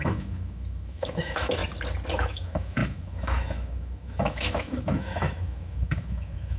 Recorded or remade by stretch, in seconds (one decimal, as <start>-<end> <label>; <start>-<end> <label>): 0.0-1.6 remade; 1.6-2.1 recorded; 2.1-6.6 remade